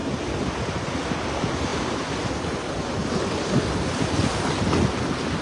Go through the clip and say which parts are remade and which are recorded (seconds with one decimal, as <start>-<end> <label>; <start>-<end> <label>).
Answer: 0.0-1.7 recorded; 1.7-2.3 remade; 2.3-3.0 recorded; 3.0-4.3 remade; 4.3-5.4 recorded